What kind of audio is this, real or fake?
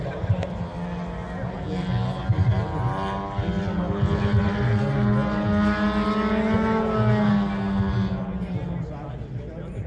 real